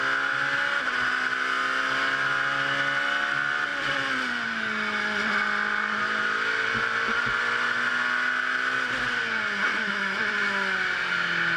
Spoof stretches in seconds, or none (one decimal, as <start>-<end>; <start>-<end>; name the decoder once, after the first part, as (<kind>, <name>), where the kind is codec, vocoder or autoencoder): 9.7-10.2 (autoencoder, DAC-VAE)

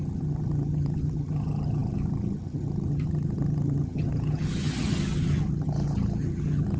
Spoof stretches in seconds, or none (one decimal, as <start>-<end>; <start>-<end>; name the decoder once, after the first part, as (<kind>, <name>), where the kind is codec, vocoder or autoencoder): 0.0-6.8 (vocoder, HiFi-GAN)

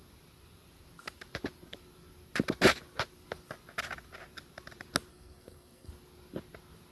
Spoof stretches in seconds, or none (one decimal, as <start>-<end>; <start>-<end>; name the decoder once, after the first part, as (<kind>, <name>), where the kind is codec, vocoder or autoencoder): 5.1-5.9 (codec, SNAC)

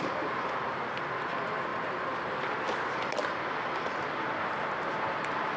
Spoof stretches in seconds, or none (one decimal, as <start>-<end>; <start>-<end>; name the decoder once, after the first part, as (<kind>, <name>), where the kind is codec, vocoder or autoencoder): none

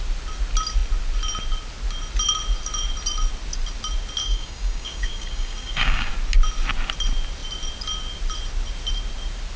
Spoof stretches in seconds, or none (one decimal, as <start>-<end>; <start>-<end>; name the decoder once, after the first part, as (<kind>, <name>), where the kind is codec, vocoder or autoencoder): 4.2-6.1 (codec, DAC)

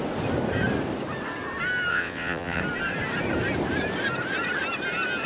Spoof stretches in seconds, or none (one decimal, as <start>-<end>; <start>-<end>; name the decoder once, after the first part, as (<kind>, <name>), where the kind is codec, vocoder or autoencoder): 1.9-2.6 (vocoder, WaveNeXt)

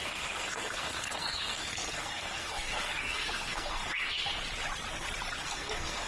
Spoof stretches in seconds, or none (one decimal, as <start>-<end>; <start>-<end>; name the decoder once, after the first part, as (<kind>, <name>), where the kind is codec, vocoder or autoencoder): 0.0-4.3 (codec, SNAC); 5.4-6.1

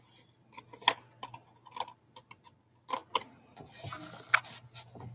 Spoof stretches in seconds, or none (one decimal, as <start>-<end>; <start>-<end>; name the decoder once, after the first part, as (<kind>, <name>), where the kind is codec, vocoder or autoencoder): none